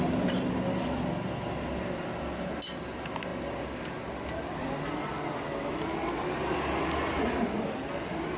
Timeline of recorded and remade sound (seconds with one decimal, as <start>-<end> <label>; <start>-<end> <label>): 0.0-8.4 recorded